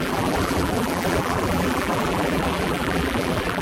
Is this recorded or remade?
remade